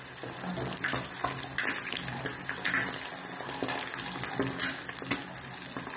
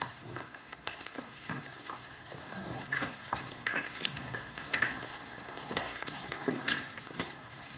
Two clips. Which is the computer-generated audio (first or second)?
second